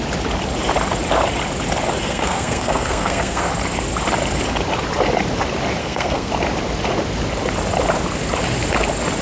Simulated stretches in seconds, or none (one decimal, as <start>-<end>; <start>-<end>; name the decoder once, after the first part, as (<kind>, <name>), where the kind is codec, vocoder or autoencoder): 2.0-3.5 (codec, SNAC); 5.8-6.3